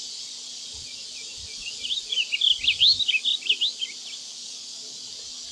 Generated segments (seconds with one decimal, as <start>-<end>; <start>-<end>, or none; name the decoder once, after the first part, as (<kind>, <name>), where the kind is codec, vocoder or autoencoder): 4.3-5.1 (codec, DAC)